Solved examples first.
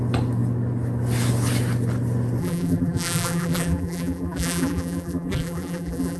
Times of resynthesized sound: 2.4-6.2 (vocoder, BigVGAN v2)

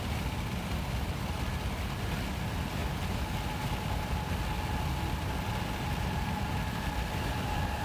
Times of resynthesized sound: none

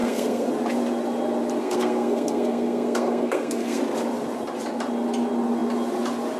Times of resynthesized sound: 0.0-0.5 (codec, SNAC); 1.6-3.8